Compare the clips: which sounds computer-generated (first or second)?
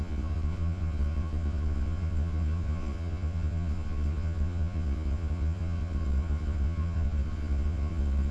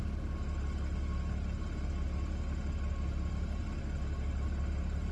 first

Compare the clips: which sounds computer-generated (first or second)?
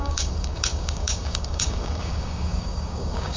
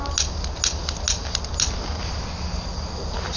first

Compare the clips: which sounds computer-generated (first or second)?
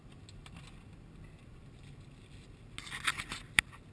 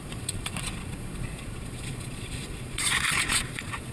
second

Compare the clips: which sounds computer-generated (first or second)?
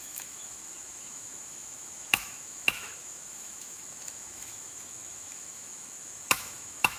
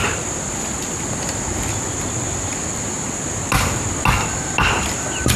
first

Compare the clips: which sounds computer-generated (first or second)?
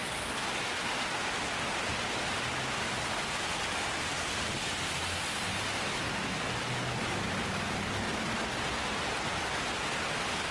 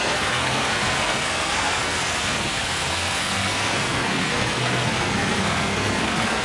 second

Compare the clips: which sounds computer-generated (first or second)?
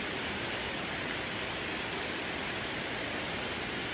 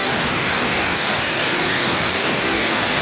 second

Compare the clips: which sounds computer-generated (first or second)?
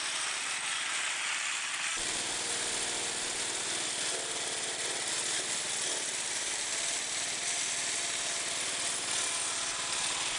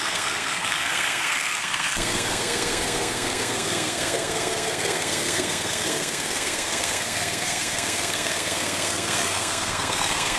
second